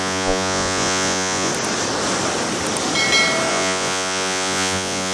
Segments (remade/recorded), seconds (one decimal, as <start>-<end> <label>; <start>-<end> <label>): 0.0-1.5 remade; 1.5-3.5 recorded; 3.5-5.1 remade